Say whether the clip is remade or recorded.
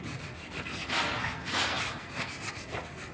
remade